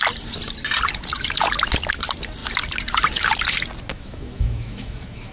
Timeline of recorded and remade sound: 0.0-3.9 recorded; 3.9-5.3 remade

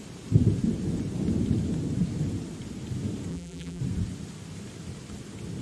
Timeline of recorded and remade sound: 0.0-3.3 recorded; 3.3-3.8 remade; 3.8-5.6 recorded

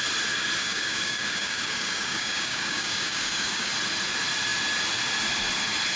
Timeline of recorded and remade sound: 0.0-0.6 recorded; 0.6-3.7 remade; 3.7-6.0 recorded

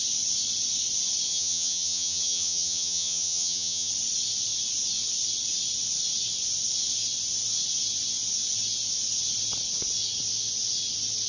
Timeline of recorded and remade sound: 0.0-1.3 recorded; 1.3-3.9 remade; 3.9-11.3 recorded

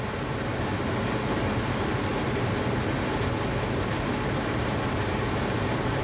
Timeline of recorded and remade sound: 0.0-6.0 recorded

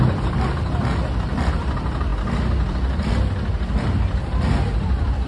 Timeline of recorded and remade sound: 0.0-5.3 recorded

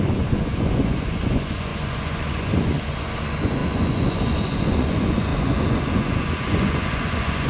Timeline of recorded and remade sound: 0.0-7.5 remade

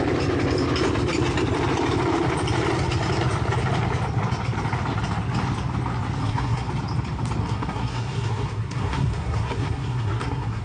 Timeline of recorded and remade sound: 0.0-6.2 recorded; 6.2-6.7 remade; 6.7-7.4 recorded; 7.4-10.6 remade